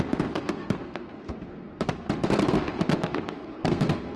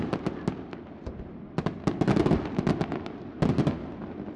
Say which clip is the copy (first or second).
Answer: first